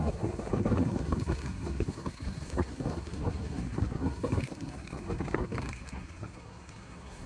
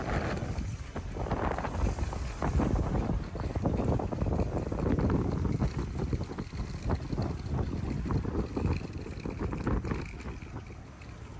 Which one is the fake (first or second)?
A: first